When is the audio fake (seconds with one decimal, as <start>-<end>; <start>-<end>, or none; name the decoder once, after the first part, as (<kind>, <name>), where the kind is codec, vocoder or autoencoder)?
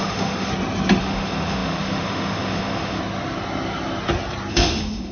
0.0-0.5 (autoencoder, DAC-VAE); 1.0-3.0; 4.5-5.1